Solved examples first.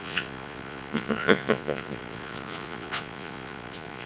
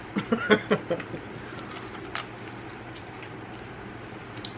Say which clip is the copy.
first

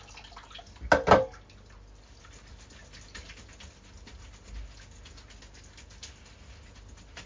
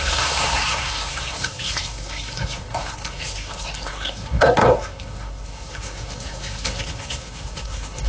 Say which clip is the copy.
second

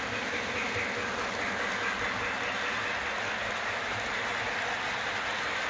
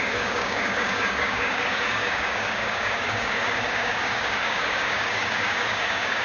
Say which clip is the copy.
second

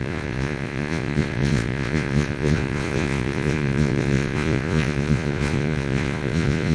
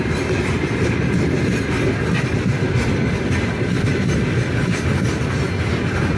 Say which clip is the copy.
first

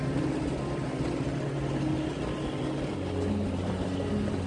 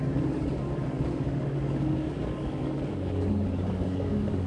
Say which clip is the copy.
second